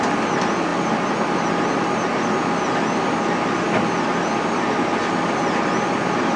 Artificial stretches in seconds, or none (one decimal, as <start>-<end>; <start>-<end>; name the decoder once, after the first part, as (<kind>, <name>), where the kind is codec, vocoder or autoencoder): none